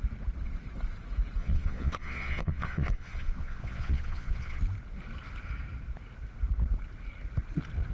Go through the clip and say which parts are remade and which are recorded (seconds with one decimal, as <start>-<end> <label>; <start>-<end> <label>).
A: 0.0-1.4 recorded; 1.4-4.6 remade; 4.6-7.9 recorded